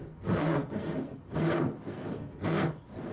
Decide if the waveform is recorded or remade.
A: remade